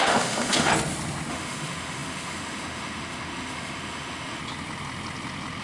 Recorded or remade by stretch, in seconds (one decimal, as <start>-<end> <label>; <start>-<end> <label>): 0.0-0.7 remade; 0.7-1.3 recorded; 1.3-4.4 remade; 4.4-5.6 recorded